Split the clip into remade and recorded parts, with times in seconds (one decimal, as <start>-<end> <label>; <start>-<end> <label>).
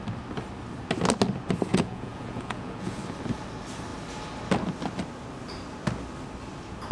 0.0-1.7 recorded; 1.7-3.0 remade; 3.0-6.9 recorded